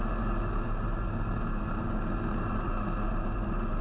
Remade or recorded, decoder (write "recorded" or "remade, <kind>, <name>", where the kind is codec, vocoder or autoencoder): recorded